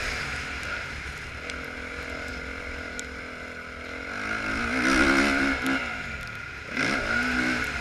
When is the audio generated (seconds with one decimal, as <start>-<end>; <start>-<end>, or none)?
none